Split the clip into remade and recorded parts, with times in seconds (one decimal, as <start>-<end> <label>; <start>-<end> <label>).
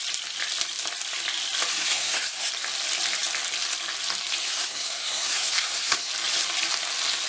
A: 0.0-1.7 recorded; 1.7-2.5 remade; 2.5-4.4 recorded; 4.4-6.1 remade; 6.1-7.3 recorded